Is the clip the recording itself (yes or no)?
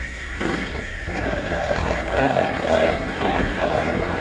no